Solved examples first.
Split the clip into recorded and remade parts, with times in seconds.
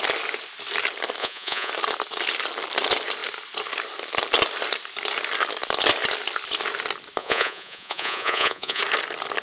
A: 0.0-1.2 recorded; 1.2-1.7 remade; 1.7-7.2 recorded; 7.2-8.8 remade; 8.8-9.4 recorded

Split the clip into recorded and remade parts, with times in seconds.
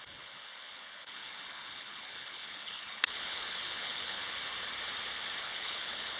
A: 0.0-4.2 remade; 4.2-5.4 recorded; 5.4-6.2 remade